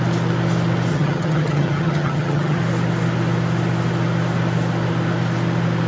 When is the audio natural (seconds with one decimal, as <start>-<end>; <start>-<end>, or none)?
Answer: 0.0-0.9; 2.6-5.9